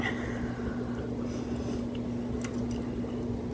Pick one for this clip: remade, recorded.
recorded